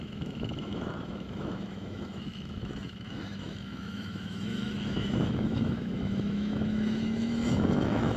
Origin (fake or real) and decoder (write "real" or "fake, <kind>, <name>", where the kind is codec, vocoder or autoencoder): fake, autoencoder, DAC-VAE